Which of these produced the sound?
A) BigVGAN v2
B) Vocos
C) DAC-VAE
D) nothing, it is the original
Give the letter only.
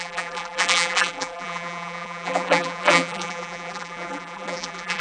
A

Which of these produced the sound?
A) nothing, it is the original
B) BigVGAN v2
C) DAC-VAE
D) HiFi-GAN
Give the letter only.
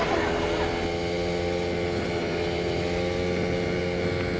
A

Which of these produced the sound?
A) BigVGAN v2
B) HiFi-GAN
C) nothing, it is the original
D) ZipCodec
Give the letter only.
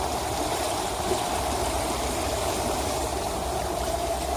A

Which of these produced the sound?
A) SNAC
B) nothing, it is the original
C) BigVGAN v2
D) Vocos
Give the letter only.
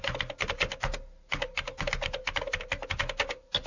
B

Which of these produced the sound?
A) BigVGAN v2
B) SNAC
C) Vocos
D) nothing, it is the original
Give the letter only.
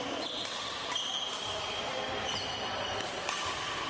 D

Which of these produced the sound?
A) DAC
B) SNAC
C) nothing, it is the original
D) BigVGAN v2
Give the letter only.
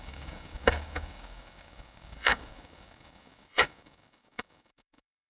A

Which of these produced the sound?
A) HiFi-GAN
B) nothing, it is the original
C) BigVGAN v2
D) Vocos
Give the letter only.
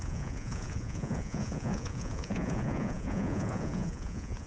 D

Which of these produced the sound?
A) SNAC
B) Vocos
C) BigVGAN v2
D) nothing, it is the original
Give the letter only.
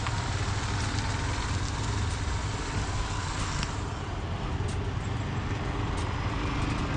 D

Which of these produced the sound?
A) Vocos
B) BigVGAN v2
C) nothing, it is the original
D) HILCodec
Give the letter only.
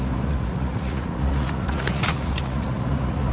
A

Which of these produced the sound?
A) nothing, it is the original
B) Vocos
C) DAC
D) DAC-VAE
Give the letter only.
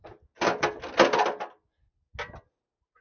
A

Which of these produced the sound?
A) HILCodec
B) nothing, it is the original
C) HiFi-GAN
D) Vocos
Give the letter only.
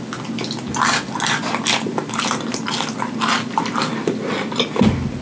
B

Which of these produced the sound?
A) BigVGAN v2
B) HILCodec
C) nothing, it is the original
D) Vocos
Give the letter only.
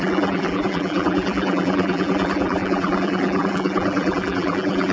A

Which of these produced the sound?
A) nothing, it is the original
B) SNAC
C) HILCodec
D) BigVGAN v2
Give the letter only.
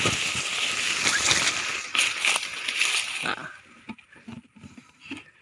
A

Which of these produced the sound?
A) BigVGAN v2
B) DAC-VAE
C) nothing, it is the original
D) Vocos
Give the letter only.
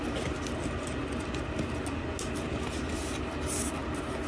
C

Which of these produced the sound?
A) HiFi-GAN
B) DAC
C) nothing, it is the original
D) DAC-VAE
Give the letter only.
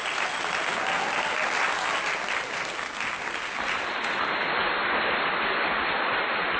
C